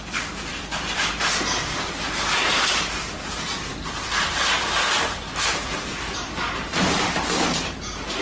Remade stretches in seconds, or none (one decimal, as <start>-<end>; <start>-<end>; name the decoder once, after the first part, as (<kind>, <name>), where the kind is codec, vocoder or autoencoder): 0.0-8.2 (vocoder, BigVGAN v2)